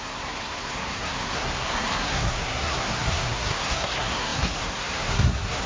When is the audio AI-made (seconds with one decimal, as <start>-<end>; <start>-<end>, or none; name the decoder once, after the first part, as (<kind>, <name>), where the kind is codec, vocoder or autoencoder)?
0.0-5.7 (codec, SNAC)

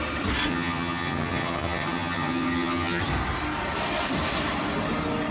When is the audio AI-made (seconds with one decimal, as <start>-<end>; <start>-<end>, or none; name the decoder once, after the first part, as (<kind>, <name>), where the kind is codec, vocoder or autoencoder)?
0.5-3.0 (vocoder, HiFi-GAN)

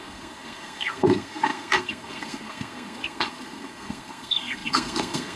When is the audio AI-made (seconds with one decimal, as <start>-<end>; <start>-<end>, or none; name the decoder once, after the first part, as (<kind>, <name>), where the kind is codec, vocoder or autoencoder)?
0.0-5.4 (codec, SNAC)

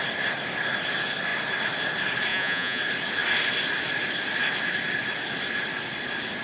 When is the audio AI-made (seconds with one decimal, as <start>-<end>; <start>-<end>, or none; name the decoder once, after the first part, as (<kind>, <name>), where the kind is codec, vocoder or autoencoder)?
2.3-2.8 (vocoder, Vocos)

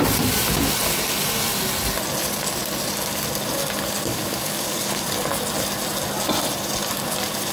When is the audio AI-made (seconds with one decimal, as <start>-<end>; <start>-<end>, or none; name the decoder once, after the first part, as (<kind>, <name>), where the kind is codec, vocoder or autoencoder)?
4.1-5.0 (codec, DAC)

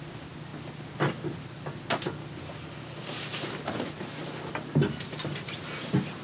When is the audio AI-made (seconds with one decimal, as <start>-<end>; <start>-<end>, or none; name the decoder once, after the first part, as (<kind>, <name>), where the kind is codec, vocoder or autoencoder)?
none